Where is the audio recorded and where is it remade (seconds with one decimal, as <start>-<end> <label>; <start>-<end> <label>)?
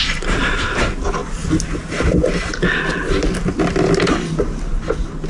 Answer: 0.0-5.3 recorded